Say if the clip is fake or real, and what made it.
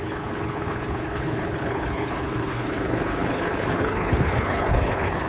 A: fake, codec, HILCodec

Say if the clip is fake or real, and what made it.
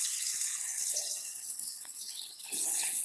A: fake, codec, HILCodec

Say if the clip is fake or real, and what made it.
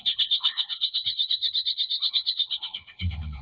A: fake, codec, HILCodec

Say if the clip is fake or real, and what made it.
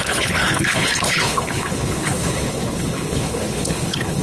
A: fake, codec, HILCodec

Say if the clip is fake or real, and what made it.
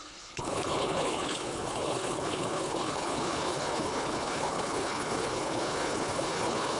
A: fake, codec, HILCodec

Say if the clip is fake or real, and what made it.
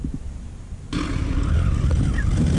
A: real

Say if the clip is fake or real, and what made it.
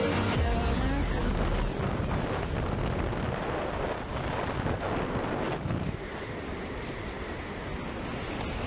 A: real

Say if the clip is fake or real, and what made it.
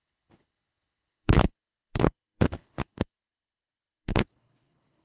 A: fake, codec, HILCodec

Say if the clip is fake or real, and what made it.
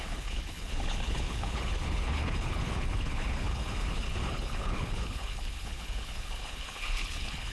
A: fake, codec, HILCodec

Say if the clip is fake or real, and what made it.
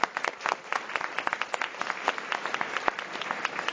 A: real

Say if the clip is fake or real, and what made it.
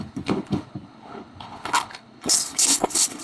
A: fake, codec, HILCodec